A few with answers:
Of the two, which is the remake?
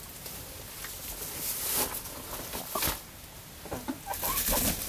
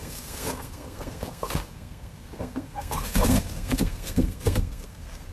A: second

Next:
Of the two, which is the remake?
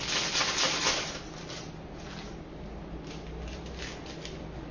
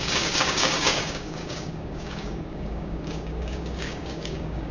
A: second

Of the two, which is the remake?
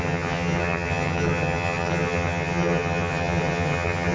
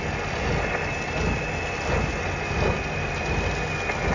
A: first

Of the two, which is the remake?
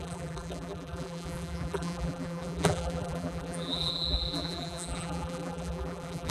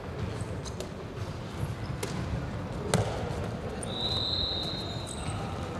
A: first